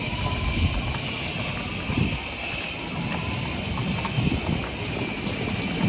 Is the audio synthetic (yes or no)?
no